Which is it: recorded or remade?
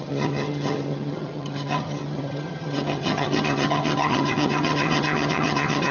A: remade